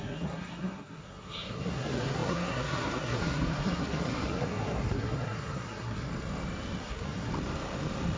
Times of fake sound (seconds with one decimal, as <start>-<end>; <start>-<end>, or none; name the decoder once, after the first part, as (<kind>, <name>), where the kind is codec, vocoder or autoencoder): 0.0-6.1 (codec, SNAC); 6.8-7.3